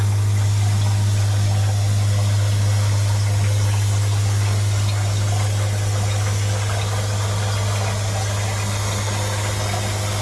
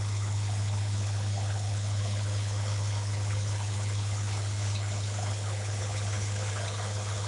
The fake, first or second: second